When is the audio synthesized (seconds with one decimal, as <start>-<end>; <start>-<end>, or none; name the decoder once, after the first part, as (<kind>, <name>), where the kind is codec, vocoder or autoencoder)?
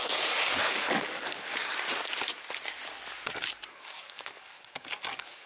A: 0.0-1.7 (codec, DAC); 3.7-5.5